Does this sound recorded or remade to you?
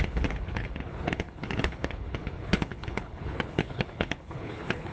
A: remade